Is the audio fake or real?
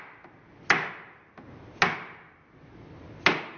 real